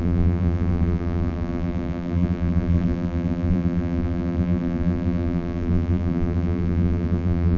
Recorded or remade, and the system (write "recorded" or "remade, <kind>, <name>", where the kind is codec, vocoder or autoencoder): remade, vocoder, BigVGAN v2